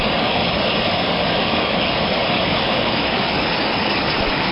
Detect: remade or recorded remade